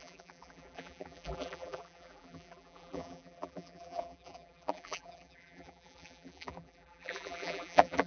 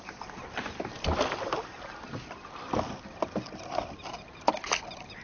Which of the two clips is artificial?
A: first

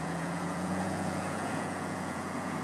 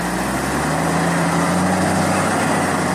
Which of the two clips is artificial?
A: first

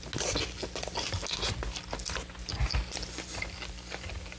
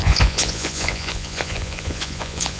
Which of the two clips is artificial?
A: second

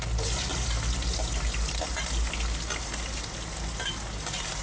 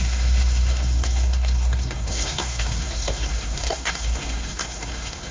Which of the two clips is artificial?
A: second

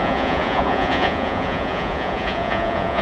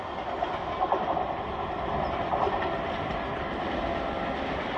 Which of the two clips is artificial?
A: first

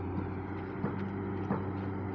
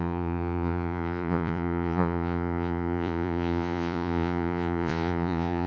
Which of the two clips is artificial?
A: second